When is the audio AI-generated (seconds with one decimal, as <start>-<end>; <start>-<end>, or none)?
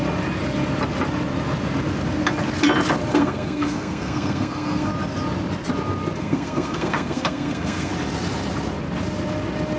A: 3.1-4.9; 6.2-7.9